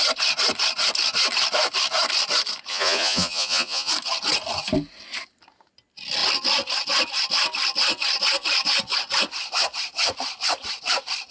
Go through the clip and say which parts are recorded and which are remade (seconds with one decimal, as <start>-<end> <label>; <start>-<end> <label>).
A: 0.0-2.7 recorded; 2.7-3.9 remade; 3.9-11.3 recorded